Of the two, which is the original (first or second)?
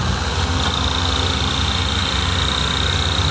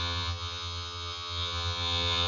first